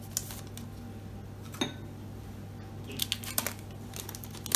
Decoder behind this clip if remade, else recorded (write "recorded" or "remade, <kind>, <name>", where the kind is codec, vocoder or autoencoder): recorded